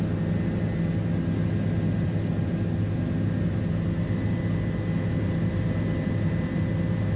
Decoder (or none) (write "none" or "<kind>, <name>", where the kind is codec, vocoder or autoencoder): none